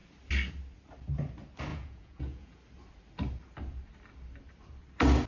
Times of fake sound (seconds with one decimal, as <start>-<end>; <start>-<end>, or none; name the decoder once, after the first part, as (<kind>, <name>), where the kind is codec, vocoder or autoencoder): 1.7-2.6 (vocoder, Vocos)